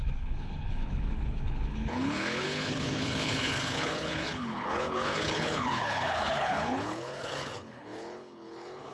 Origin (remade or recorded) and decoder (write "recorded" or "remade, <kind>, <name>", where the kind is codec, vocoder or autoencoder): remade, codec, HILCodec